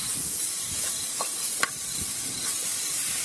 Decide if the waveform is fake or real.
real